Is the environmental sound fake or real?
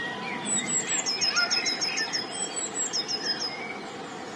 real